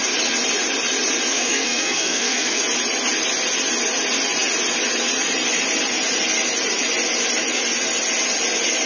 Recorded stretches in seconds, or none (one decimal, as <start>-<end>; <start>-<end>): 0.0-1.3; 2.6-8.9